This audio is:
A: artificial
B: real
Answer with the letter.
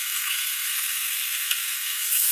A